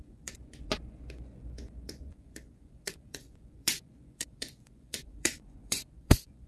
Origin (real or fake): fake